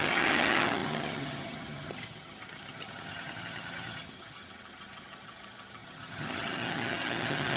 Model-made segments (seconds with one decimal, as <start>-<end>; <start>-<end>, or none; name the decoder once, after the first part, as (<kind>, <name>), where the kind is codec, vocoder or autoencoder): 0.0-7.6 (vocoder, HiFi-GAN)